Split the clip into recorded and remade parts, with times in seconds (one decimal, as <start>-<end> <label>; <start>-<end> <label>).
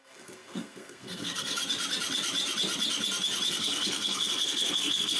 0.0-1.6 remade; 1.6-3.5 recorded; 3.5-5.2 remade